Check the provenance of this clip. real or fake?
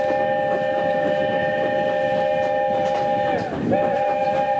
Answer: real